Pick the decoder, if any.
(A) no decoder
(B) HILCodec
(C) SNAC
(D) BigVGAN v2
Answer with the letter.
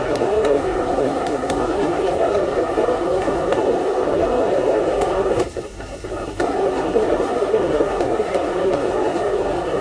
C